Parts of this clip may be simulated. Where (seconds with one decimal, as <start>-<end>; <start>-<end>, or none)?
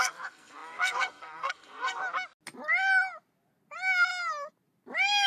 0.0-2.0